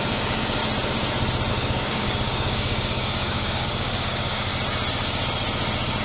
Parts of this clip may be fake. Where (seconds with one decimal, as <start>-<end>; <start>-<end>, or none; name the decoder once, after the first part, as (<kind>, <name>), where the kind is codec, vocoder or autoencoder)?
0.0-0.6 (codec, DAC); 1.5-4.5